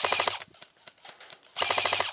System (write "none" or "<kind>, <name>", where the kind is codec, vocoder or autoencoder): none